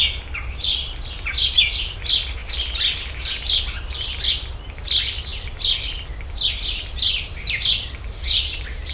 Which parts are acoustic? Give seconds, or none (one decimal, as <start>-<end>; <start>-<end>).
0.0-8.9

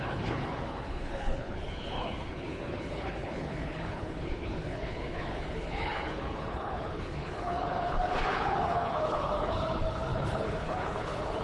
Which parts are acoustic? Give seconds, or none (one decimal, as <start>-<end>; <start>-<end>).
none

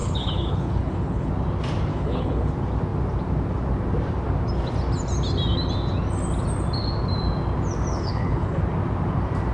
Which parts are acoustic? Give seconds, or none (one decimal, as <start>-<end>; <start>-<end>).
1.3-1.9; 2.5-7.9; 8.6-9.5

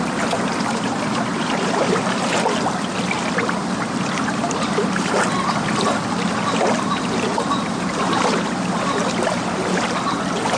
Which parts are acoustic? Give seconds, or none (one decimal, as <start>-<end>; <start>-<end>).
0.0-10.6

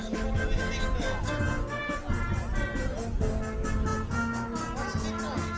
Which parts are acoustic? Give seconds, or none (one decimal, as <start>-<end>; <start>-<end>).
0.0-5.6

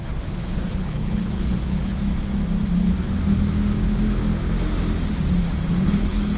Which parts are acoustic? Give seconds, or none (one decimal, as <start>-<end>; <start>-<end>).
2.0-5.7